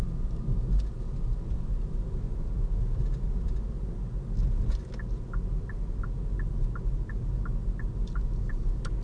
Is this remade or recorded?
recorded